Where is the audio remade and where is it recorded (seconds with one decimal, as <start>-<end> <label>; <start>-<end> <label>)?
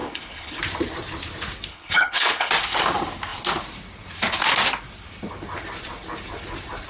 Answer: 0.0-0.6 remade; 0.6-1.7 recorded; 1.7-2.5 remade; 2.5-6.9 recorded